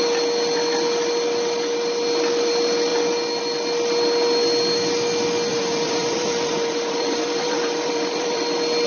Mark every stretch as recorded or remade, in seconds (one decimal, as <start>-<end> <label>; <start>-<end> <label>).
0.0-5.5 recorded; 5.5-8.4 remade; 8.4-8.9 recorded